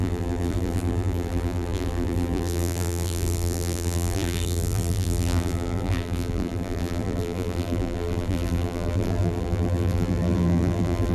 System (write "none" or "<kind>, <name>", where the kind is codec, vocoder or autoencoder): vocoder, BigVGAN v2